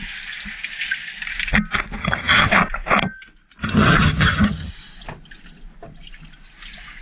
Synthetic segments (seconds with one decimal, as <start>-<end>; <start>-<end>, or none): 2.0-2.5; 3.6-4.7